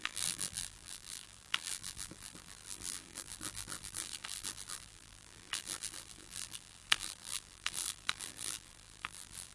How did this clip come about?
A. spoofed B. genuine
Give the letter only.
A